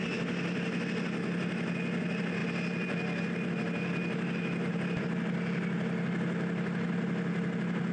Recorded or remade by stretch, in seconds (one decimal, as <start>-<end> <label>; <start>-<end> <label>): 0.0-7.9 recorded